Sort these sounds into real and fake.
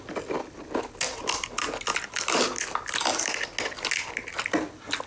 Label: real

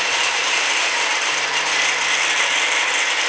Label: real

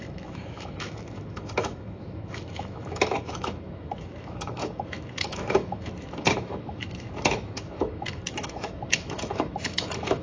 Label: fake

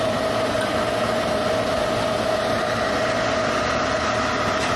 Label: real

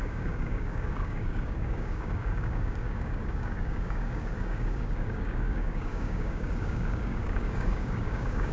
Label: fake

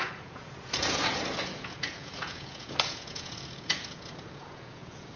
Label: fake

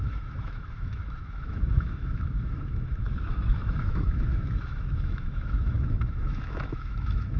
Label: fake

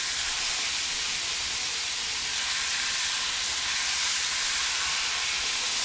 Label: real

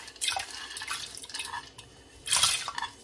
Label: real